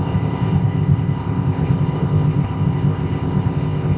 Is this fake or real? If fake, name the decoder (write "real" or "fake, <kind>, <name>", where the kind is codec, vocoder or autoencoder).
fake, codec, ZipCodec